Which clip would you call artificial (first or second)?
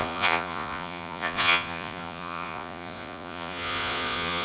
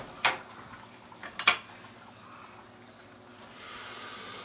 first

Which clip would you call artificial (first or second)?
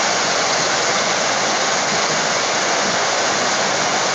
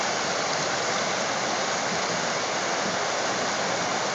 first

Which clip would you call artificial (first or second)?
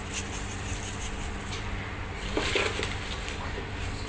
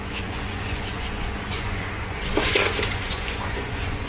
second